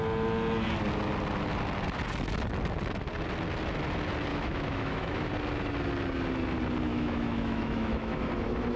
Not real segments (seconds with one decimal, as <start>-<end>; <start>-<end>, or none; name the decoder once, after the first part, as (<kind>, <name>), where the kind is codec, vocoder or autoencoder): 4.3-5.3 (autoencoder, DAC-VAE); 6.9-8.3